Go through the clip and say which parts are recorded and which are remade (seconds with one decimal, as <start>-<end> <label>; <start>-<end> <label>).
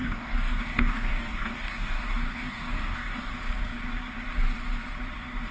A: 0.0-3.3 remade; 3.3-5.5 recorded